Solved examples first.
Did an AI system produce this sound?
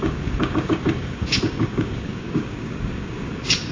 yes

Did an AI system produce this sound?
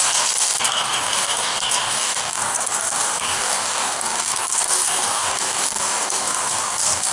yes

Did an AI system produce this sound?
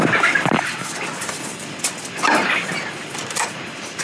no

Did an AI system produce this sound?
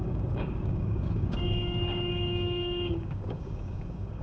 yes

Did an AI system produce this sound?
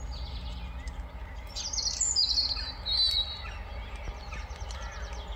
no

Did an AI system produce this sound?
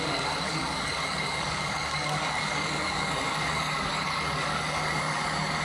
yes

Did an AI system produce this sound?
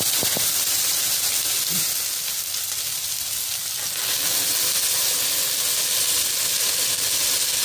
no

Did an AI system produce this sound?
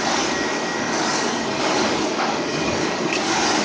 yes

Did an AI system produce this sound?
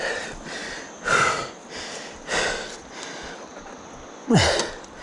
no